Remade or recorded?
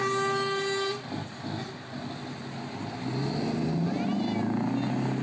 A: recorded